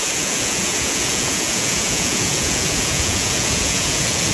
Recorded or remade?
remade